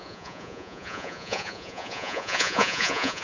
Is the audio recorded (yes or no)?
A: no